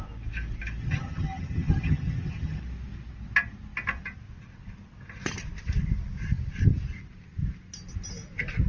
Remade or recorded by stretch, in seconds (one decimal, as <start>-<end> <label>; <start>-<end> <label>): 0.0-0.8 recorded; 0.8-2.6 remade; 2.6-8.7 recorded